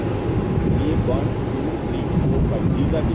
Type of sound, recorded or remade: recorded